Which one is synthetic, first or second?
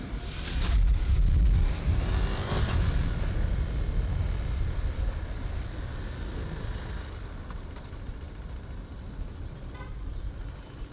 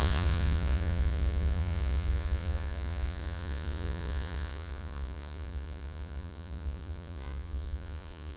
second